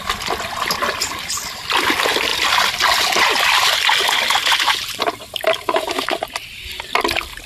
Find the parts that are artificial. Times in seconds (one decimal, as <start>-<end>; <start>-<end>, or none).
none

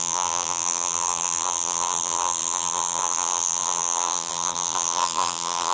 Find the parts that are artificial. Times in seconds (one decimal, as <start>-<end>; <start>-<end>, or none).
0.0-5.7

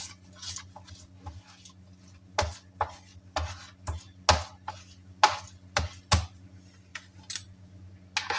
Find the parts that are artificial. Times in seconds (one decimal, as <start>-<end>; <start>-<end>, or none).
none

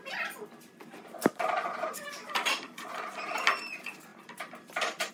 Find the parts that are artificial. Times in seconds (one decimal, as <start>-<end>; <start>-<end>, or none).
none

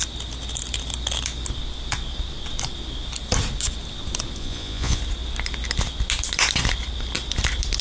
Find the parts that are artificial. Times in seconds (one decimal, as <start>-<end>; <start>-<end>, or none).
4.4-5.0

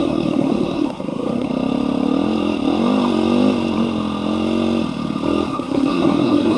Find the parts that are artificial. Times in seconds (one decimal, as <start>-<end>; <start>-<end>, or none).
0.0-1.5; 5.5-6.6